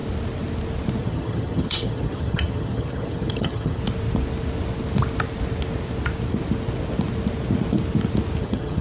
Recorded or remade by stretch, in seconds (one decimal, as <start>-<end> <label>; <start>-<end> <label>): 0.0-1.0 recorded; 1.0-3.8 remade; 3.8-8.4 recorded; 8.4-8.8 remade